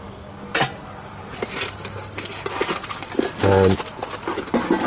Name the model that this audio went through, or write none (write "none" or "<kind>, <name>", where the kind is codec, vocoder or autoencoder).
none